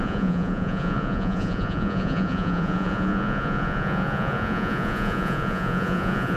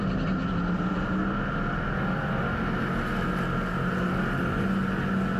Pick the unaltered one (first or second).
second